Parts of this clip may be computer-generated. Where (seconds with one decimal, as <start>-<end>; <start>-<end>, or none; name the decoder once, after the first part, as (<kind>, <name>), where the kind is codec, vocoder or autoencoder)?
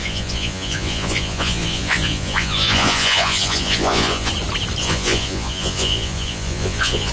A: 0.0-4.3 (vocoder, Vocos); 4.8-7.1